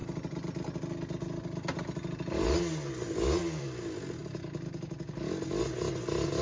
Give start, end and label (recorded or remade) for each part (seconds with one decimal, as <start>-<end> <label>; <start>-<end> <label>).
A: 0.0-6.4 recorded